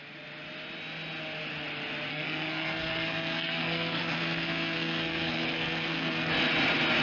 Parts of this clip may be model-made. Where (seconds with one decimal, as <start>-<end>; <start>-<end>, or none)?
2.1-6.3